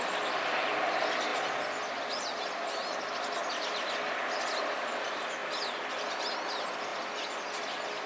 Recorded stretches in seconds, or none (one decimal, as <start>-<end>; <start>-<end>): 0.0-8.1